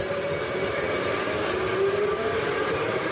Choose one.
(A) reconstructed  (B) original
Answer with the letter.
B